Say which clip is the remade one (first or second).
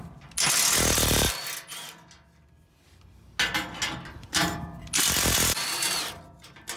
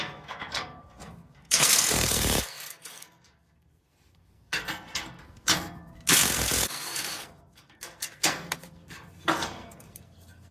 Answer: second